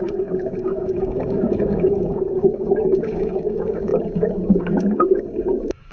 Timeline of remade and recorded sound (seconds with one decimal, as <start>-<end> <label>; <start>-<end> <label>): 0.0-5.9 remade